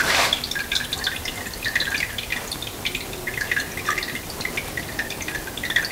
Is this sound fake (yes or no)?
no